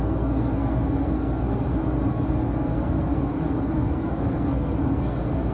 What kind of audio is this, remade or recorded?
remade